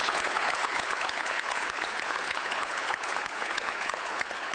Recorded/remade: remade